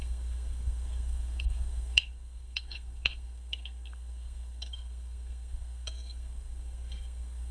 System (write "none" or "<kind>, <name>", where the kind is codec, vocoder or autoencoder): codec, SNAC